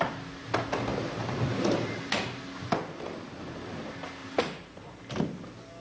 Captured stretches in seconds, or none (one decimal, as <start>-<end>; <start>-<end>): 0.0-4.2; 5.0-5.8